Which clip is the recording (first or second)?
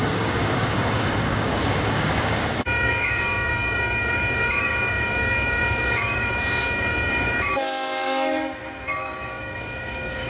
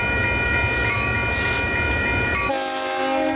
second